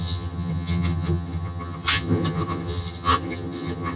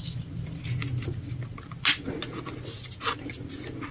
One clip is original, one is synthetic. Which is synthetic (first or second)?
first